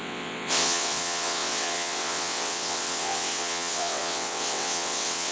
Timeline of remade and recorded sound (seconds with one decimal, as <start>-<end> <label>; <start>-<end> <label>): 0.0-5.3 remade